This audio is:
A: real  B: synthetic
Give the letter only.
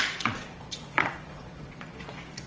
B